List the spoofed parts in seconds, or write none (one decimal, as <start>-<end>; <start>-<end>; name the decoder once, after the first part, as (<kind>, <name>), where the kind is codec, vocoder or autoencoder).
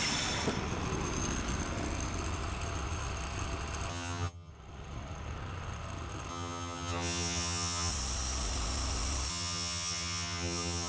3.9-4.5 (vocoder, HiFi-GAN); 6.3-7.9; 9.3-10.9